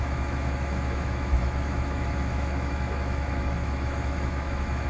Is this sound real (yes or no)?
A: no